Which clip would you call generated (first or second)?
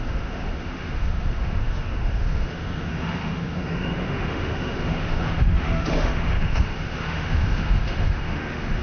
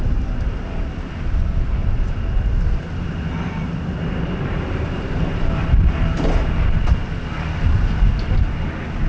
first